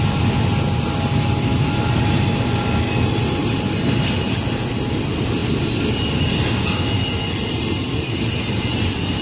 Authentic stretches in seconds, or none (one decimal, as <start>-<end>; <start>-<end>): 0.0-9.2